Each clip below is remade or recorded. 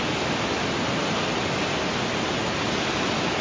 recorded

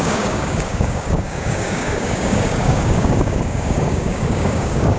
remade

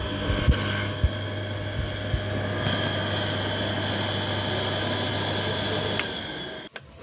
recorded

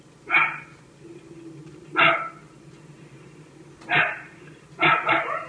recorded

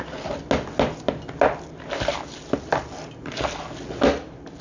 recorded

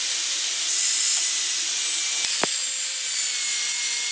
recorded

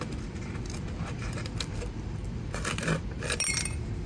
remade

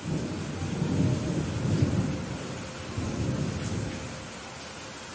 recorded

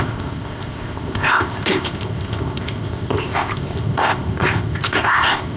remade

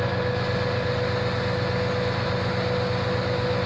recorded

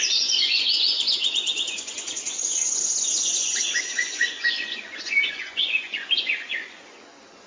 remade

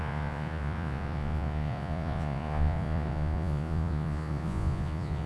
remade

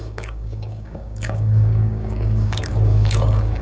remade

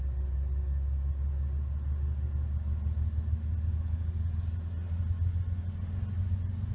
recorded